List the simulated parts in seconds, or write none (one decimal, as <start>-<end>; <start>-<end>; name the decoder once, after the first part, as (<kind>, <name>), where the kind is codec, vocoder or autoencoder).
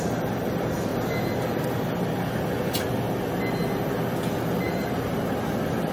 0.0-0.9 (vocoder, BigVGAN v2); 4.4-5.9